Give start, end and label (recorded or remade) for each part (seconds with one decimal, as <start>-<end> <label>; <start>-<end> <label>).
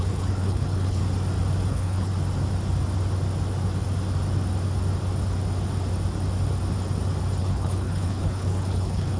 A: 0.0-1.0 remade; 1.0-1.7 recorded; 1.7-2.1 remade; 2.1-7.4 recorded; 7.4-9.2 remade